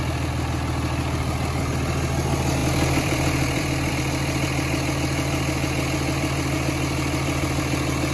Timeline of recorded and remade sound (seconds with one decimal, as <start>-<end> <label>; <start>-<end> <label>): 0.0-2.6 recorded; 2.6-3.9 remade; 3.9-8.1 recorded